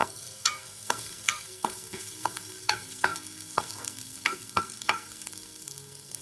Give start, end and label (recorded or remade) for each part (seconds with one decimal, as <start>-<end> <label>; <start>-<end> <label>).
0.0-6.2 remade